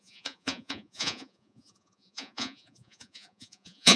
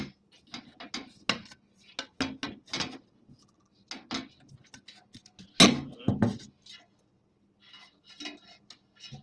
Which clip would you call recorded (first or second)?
second